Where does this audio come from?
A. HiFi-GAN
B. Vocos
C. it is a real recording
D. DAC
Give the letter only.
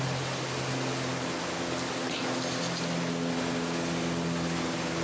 C